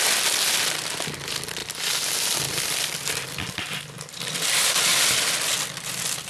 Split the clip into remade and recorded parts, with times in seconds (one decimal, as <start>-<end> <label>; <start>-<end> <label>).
0.0-6.3 recorded